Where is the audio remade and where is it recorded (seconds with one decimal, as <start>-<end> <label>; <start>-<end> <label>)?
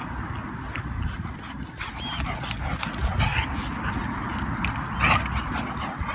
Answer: 0.0-6.1 recorded